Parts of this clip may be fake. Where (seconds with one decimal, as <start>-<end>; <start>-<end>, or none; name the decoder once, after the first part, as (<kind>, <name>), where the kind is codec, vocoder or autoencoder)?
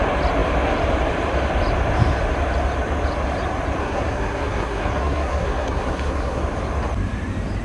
3.8-6.4 (codec, SNAC)